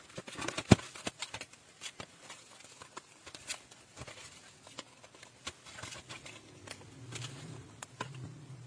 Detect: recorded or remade remade